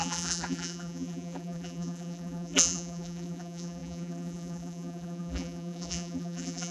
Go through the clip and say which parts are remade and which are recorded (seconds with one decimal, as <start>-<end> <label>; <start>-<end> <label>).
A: 0.0-6.7 remade